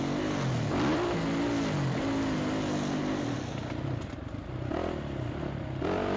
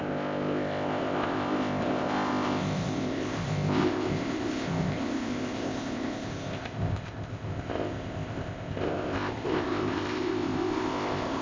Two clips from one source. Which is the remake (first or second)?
second